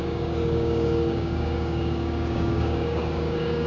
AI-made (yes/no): yes